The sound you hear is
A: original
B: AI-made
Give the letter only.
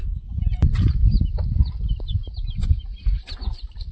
A